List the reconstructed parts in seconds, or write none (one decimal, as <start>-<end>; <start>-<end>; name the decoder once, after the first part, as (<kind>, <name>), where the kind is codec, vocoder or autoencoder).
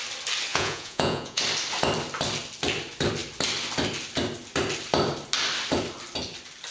0.5-1.4 (vocoder, Vocos)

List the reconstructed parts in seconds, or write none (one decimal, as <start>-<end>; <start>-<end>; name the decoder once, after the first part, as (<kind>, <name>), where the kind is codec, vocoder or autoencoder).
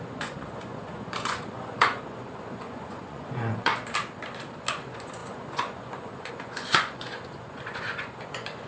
0.0-3.7 (vocoder, Vocos); 4.7-8.7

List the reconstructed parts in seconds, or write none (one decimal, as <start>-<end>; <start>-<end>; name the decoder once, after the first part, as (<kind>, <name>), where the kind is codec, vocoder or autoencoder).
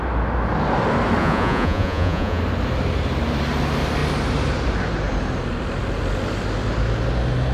1.2-2.4 (vocoder, Vocos)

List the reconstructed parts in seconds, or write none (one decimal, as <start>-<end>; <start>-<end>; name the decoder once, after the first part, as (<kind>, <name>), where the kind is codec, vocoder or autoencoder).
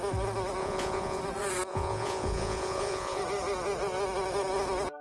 0.6-1.2 (vocoder, Vocos); 1.7-3.2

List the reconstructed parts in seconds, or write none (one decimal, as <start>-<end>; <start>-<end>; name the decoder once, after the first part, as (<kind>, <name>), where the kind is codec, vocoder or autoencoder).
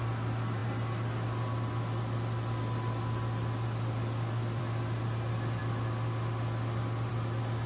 none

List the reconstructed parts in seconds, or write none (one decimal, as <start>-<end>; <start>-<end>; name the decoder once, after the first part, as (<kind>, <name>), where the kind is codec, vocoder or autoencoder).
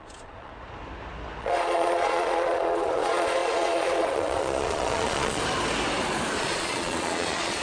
0.0-0.5 (vocoder, Vocos); 1.4-5.4; 6.4-7.6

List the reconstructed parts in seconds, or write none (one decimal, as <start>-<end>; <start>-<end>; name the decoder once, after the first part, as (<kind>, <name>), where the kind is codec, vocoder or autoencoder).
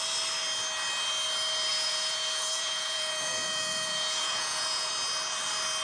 1.7-4.9 (vocoder, Vocos)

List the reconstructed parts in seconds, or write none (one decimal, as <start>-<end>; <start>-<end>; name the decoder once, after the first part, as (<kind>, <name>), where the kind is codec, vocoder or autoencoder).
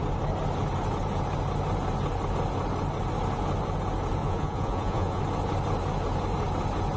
4.2-5.2 (vocoder, Vocos)